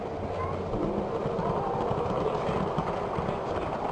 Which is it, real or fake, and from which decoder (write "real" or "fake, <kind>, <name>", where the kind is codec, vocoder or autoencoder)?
real